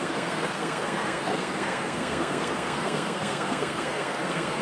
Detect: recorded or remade remade